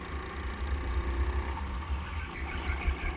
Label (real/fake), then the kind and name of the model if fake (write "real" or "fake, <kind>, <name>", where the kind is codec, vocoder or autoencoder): real